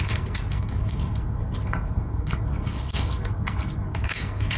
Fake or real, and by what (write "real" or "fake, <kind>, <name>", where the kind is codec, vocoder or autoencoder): fake, codec, SNAC